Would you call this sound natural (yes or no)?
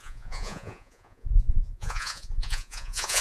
no